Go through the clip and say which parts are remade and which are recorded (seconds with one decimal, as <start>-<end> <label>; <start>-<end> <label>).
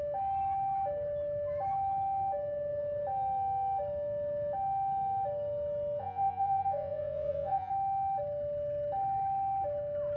0.0-6.0 recorded; 6.0-7.7 remade; 7.7-10.2 recorded